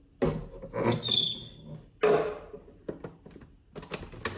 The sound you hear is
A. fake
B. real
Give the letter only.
B